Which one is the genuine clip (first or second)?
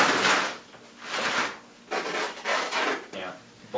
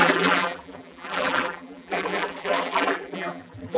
first